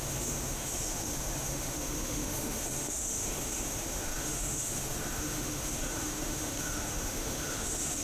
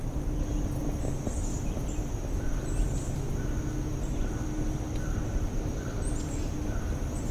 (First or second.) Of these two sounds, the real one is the second